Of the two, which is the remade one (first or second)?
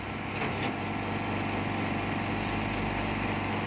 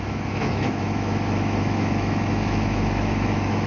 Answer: second